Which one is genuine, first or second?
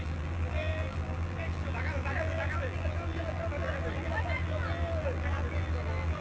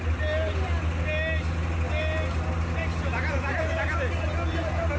second